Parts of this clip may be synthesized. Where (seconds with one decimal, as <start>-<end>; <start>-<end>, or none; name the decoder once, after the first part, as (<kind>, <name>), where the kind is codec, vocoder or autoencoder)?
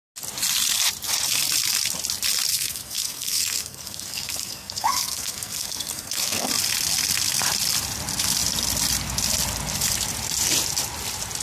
2.5-6.5 (codec, SNAC)